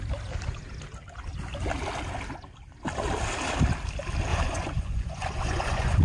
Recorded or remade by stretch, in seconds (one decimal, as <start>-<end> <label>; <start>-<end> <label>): 0.0-4.3 recorded; 4.3-6.0 remade